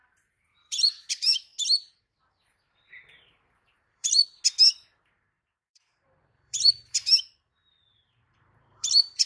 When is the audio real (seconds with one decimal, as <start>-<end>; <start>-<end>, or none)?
1.5-2.0; 4.2-5.7